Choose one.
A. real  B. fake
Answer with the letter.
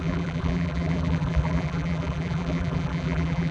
B